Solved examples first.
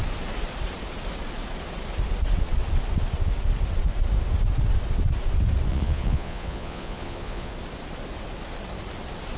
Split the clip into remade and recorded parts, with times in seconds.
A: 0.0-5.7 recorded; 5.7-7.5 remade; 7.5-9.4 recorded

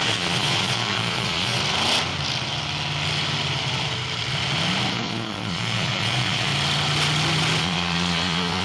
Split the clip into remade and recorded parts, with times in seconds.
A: 0.0-1.6 remade; 1.6-4.9 recorded; 4.9-6.5 remade; 6.5-7.6 recorded; 7.6-8.6 remade